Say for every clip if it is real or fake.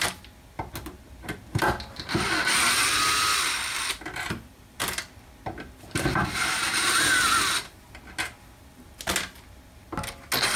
real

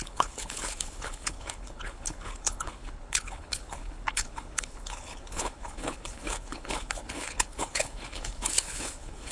fake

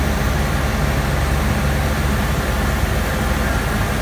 real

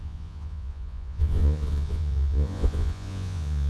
fake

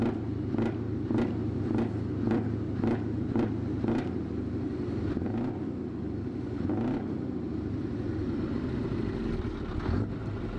real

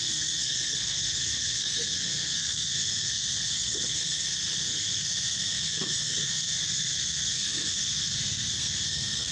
fake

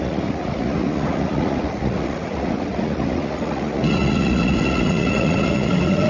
fake